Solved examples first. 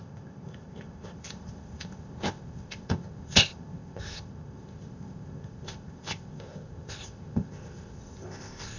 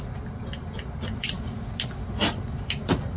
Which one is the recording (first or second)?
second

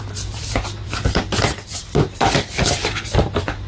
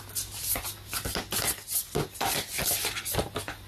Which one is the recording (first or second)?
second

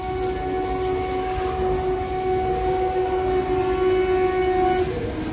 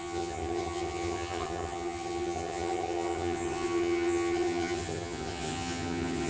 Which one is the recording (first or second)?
first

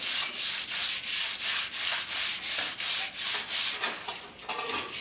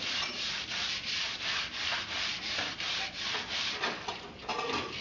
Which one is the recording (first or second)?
first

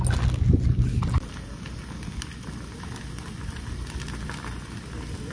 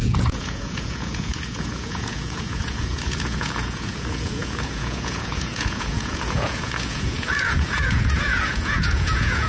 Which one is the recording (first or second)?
first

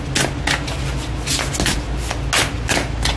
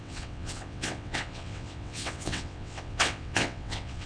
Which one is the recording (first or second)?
first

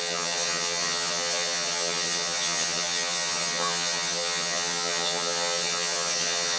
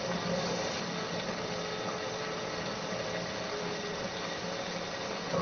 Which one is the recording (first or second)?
second